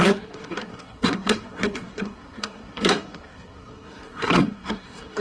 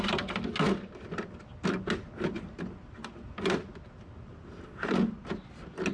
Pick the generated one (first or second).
first